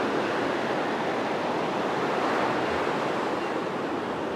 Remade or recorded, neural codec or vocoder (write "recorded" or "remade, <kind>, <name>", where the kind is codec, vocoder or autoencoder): recorded